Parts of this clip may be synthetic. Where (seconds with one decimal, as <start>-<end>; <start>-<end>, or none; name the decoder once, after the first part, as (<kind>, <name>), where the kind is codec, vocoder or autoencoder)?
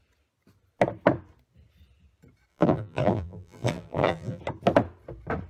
2.5-4.4 (vocoder, BigVGAN v2)